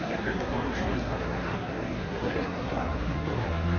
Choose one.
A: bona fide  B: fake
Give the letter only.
B